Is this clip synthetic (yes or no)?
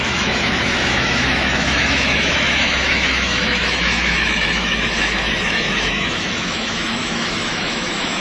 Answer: yes